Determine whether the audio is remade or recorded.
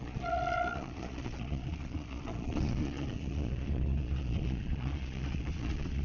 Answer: remade